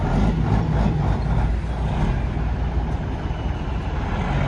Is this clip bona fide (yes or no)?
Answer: yes